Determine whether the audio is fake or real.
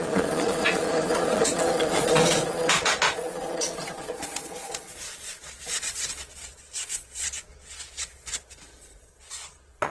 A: fake